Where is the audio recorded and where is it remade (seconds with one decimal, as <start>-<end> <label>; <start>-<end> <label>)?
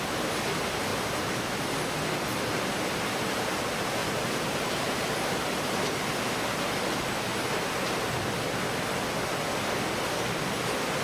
0.0-0.9 recorded; 0.9-1.5 remade; 1.5-4.0 recorded; 4.0-5.2 remade; 5.2-7.3 recorded; 7.3-8.2 remade; 8.2-11.0 recorded